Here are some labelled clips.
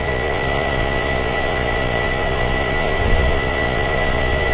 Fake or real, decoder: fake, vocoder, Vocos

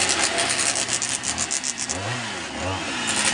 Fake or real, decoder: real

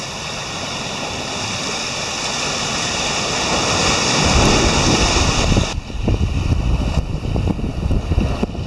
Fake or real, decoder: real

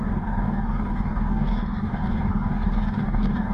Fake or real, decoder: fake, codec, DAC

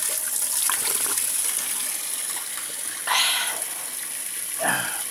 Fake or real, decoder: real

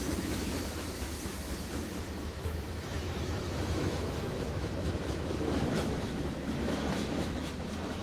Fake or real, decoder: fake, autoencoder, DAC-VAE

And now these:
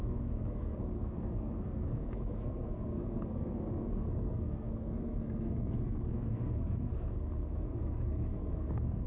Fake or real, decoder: fake, codec, SNAC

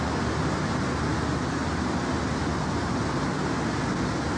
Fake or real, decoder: real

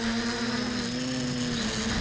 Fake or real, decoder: real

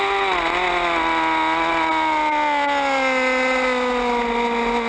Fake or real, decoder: real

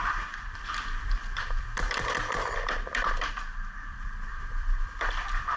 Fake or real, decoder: fake, vocoder, BigVGAN v2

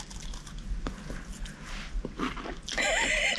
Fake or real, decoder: real